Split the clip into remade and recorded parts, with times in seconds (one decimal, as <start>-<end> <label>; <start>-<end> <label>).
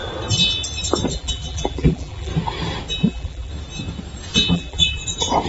0.0-1.1 recorded; 1.1-2.3 remade; 2.3-2.9 recorded; 2.9-3.5 remade; 3.5-4.5 recorded; 4.5-5.0 remade; 5.0-5.5 recorded